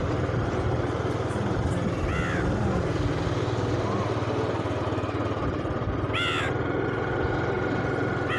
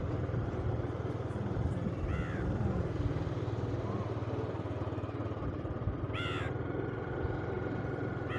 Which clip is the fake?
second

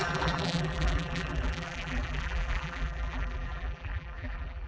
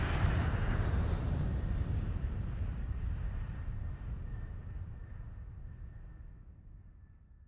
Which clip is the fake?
first